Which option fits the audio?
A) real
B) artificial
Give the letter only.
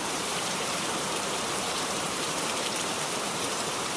B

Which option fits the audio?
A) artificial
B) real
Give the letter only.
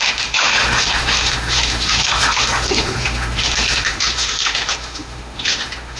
A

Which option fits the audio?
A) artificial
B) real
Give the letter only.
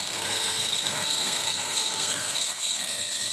A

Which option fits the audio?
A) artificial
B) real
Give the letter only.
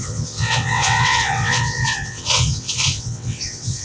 A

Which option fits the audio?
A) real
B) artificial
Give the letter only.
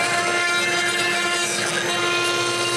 A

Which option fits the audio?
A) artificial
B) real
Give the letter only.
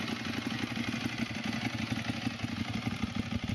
B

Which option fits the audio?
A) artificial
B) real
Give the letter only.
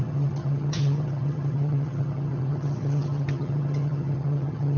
A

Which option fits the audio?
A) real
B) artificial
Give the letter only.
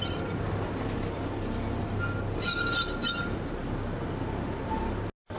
A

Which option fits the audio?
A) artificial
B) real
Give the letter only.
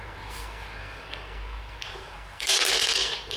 A